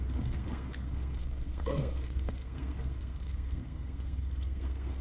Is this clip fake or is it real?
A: fake